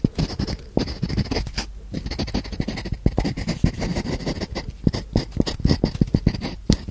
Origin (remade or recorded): recorded